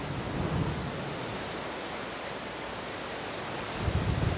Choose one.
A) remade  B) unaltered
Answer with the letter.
B